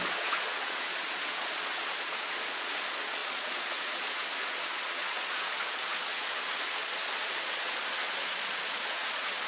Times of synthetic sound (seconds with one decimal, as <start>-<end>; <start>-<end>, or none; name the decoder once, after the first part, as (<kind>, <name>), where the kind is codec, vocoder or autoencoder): 0.0-9.5 (vocoder, Vocos)